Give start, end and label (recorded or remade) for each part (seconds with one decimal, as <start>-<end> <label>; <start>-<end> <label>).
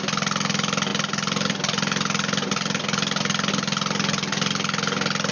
0.0-5.3 recorded